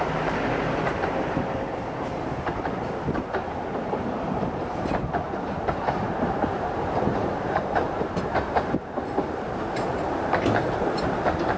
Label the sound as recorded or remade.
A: remade